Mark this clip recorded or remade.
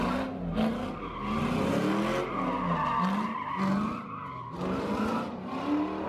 recorded